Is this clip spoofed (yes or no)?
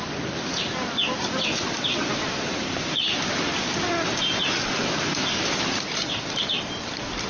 no